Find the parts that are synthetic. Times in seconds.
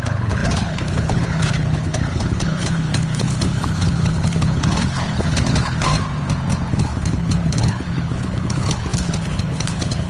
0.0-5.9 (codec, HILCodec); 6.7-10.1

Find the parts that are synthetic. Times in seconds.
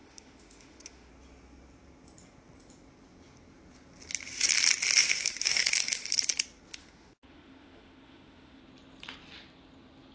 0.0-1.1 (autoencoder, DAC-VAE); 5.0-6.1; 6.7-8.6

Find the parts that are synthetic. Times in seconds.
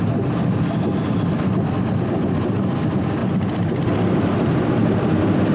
none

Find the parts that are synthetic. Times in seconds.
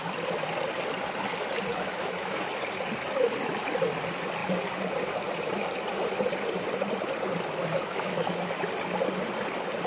1.7-2.6 (autoencoder, DAC-VAE); 7.6-8.4